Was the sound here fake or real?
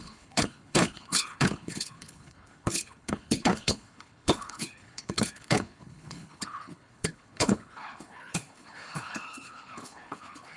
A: fake